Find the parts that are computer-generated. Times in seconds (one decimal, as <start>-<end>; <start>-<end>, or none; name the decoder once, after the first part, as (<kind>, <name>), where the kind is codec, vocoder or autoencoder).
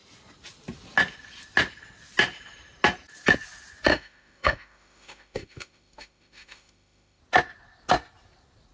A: 3.9-7.2 (autoencoder, DAC-VAE)